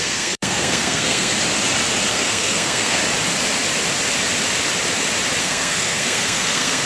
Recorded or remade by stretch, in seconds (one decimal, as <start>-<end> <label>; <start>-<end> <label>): 0.0-1.3 remade; 1.3-2.1 recorded; 2.1-3.0 remade; 3.0-5.4 recorded; 5.4-6.9 remade